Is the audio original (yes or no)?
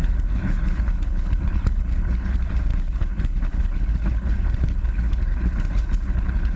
no